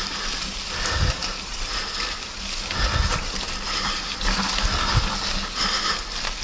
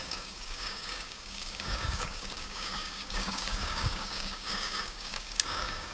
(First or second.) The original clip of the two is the first